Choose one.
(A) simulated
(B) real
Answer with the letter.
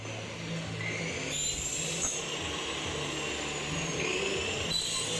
B